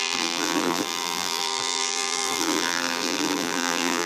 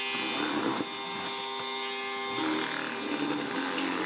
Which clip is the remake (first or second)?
first